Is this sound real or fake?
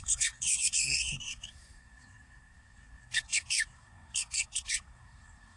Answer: fake